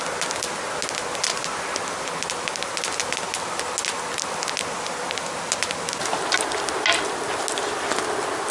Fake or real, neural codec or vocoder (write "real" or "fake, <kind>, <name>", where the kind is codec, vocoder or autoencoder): real